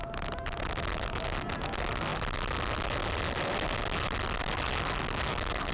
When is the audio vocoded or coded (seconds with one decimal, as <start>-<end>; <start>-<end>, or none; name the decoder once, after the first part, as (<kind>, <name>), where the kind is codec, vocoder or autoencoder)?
none